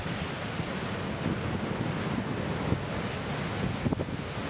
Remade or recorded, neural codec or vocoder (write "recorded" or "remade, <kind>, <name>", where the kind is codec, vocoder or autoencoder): recorded